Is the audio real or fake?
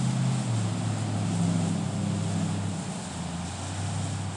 real